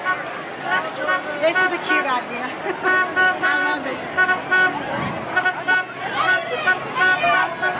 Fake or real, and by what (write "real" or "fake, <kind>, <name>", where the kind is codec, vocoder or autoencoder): real